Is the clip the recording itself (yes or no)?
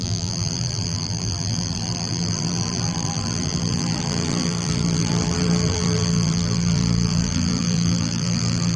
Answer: no